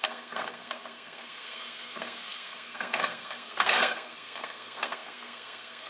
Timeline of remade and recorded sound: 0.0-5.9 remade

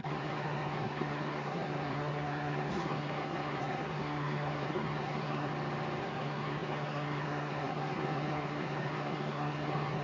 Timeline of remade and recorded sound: 0.0-5.5 remade; 5.5-6.0 recorded; 6.0-10.0 remade

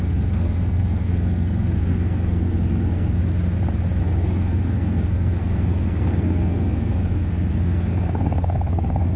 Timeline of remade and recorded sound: 0.0-3.2 remade; 3.2-4.0 recorded; 4.0-9.2 remade

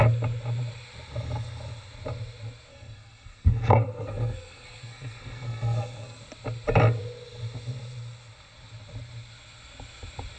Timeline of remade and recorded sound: 0.0-2.7 recorded; 2.7-6.2 remade; 6.2-10.4 recorded

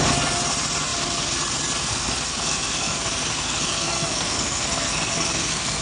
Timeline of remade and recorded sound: 0.0-1.9 recorded; 1.9-5.8 remade

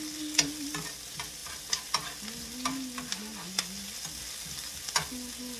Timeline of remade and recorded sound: 0.0-5.6 recorded

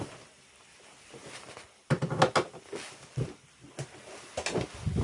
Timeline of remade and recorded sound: 0.0-5.0 recorded